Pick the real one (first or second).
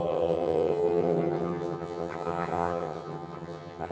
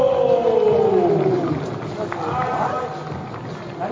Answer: second